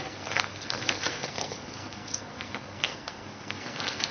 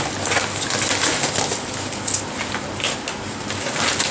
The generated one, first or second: first